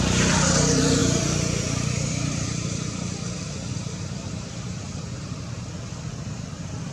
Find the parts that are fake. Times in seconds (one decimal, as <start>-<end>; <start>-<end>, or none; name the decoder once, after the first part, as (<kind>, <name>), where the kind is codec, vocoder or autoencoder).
0.0-6.9 (vocoder, BigVGAN v2)